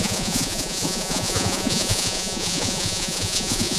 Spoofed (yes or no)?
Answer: yes